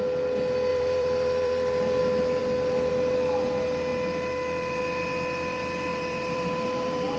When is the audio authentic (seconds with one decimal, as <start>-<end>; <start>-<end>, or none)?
0.0-0.7; 2.0-5.9